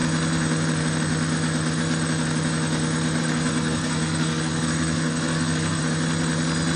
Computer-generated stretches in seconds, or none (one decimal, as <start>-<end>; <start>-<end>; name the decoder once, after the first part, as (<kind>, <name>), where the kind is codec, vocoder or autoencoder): 3.2-5.8 (codec, SNAC)

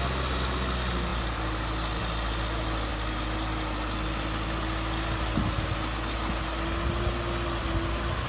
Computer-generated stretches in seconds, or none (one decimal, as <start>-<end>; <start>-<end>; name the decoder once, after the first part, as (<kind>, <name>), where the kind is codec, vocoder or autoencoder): none

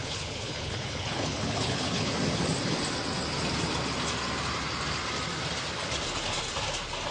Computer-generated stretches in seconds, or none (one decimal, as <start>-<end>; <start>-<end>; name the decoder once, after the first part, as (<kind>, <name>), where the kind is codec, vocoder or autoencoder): 0.0-2.1 (codec, HILCodec)

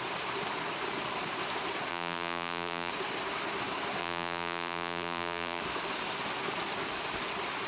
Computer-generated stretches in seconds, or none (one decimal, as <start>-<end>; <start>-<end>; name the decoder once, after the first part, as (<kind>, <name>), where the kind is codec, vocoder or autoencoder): 1.9-2.9 (vocoder, BigVGAN v2); 4.0-5.6